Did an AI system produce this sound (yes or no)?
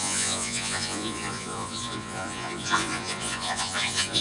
yes